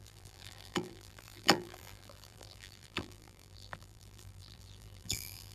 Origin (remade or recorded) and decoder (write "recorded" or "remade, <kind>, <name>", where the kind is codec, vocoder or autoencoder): remade, vocoder, BigVGAN v2